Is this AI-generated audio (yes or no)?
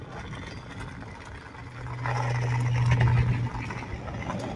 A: no